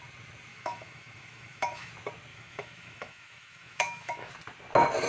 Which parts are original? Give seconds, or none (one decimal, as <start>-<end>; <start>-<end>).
0.0-0.5; 1.9-2.3; 4.3-5.1